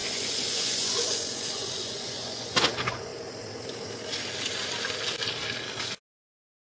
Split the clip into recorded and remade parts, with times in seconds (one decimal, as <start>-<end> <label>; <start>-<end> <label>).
0.0-3.1 remade; 3.1-6.3 recorded; 6.3-6.8 remade